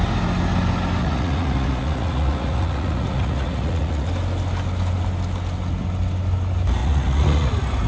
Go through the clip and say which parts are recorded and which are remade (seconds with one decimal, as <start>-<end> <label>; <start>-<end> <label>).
0.0-1.0 recorded; 1.0-4.1 remade; 4.1-6.8 recorded; 6.8-7.5 remade; 7.5-7.9 recorded